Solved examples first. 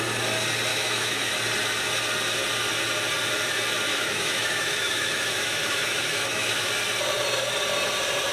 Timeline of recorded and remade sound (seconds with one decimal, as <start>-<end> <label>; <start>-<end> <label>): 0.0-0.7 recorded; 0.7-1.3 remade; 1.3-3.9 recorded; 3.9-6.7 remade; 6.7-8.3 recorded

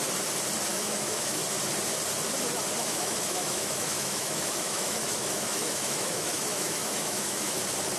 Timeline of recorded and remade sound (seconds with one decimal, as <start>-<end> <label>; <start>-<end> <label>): 0.0-0.7 recorded; 0.7-1.4 remade; 1.4-2.8 recorded; 2.8-7.6 remade; 7.6-8.0 recorded

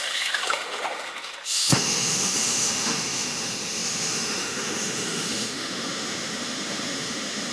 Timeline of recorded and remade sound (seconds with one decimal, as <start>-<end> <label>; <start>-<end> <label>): 0.0-7.5 remade

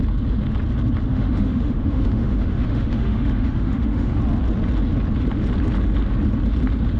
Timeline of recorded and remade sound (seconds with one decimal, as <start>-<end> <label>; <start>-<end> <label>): 0.0-1.1 recorded; 1.1-4.2 remade; 4.2-7.0 recorded

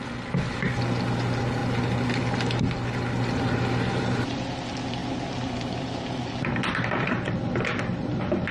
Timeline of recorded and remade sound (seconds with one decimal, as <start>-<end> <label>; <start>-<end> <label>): 0.0-8.5 recorded

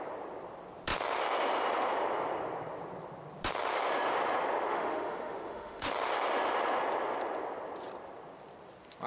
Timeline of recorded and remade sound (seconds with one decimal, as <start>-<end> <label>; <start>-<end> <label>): 0.0-4.7 recorded; 4.7-5.9 remade; 5.9-9.1 recorded

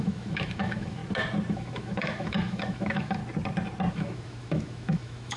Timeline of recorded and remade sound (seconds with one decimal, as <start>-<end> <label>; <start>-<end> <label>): 0.0-1.0 remade; 1.0-1.5 recorded; 1.5-3.2 remade; 3.2-3.9 recorded; 3.9-5.4 remade

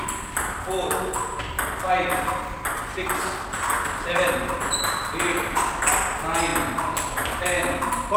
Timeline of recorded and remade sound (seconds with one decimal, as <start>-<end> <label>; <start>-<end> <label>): 0.0-8.2 recorded